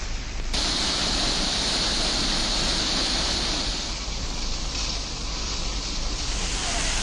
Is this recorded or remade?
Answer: remade